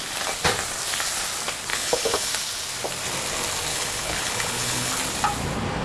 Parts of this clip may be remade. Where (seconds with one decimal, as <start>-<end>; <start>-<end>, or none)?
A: 1.7-2.3; 3.7-4.9